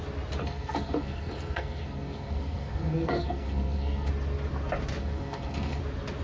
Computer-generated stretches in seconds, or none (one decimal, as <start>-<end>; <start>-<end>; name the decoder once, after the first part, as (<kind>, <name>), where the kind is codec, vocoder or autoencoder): 0.4-4.1 (codec, SNAC); 5.0-5.8